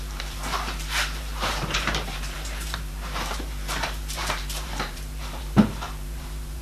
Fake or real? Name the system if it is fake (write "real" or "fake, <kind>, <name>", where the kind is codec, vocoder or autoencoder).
fake, vocoder, BigVGAN v2